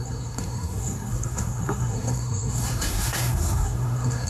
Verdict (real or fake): fake